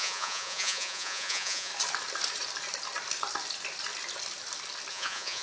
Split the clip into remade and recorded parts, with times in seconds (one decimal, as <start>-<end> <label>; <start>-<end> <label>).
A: 0.0-1.7 remade; 1.7-4.9 recorded; 4.9-5.4 remade